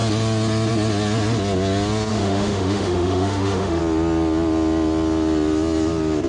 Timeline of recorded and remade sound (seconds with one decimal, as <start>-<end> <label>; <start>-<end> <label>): 0.0-2.1 recorded; 2.1-3.8 remade; 3.8-6.3 recorded